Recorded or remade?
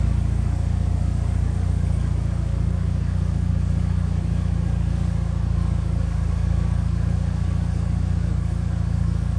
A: remade